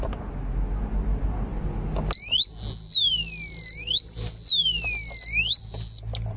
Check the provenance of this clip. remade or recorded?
recorded